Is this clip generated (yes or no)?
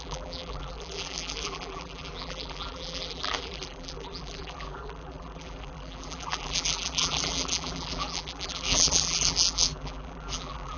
yes